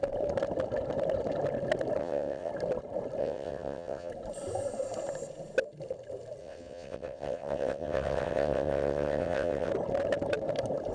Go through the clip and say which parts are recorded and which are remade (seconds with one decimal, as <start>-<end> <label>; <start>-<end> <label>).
0.0-2.0 recorded; 2.0-2.5 remade; 2.5-3.2 recorded; 3.2-4.1 remade; 4.1-6.4 recorded; 6.4-9.7 remade; 9.7-10.9 recorded